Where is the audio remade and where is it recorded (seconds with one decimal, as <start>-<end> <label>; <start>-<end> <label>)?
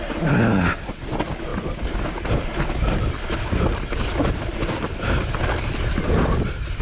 0.0-6.8 recorded